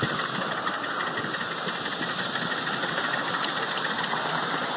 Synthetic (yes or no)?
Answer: no